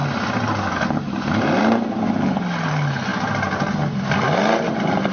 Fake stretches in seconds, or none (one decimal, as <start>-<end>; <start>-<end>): none